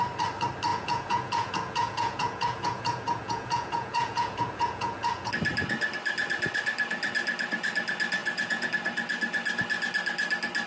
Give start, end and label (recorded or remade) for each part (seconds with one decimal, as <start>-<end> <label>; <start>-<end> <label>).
0.0-0.7 recorded; 0.7-5.3 remade; 5.3-8.2 recorded; 8.2-8.7 remade; 8.7-10.7 recorded